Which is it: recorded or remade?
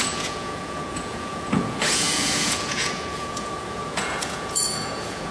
remade